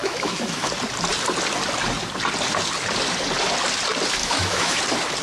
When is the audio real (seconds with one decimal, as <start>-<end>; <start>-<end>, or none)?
0.7-4.2; 4.8-5.2